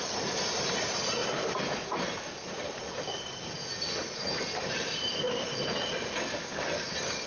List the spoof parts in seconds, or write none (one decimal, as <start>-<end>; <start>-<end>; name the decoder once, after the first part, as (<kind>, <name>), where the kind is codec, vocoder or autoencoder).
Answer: none